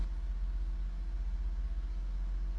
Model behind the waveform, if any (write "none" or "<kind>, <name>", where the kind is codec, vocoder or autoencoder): none